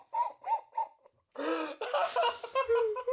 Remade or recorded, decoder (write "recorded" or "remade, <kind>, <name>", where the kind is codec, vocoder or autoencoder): remade, vocoder, BigVGAN v2